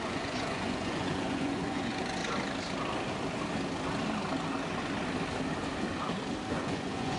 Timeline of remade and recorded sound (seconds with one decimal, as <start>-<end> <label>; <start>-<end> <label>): 0.0-2.2 remade; 2.2-6.5 recorded; 6.5-7.2 remade